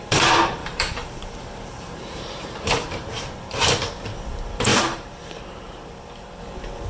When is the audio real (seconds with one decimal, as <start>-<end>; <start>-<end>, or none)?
0.0-0.6; 3.7-4.7; 6.4-6.9